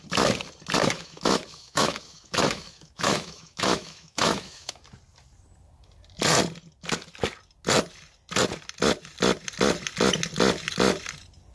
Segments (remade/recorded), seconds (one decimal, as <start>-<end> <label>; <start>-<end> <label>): 0.0-0.8 recorded; 0.8-4.8 remade; 4.8-11.5 recorded